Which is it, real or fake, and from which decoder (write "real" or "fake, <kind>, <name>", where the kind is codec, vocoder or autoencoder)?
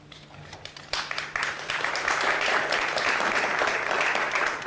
fake, vocoder, BigVGAN v2